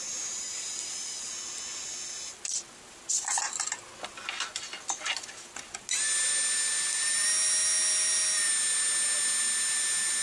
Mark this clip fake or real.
real